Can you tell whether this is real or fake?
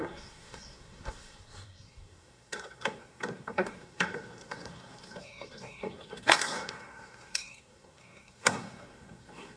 fake